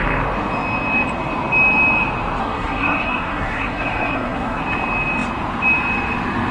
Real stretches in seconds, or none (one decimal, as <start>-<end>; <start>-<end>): 0.0-2.4; 4.6-6.5